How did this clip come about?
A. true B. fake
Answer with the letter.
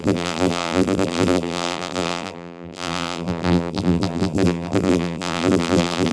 B